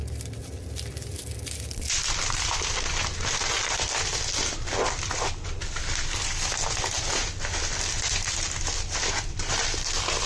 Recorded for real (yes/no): yes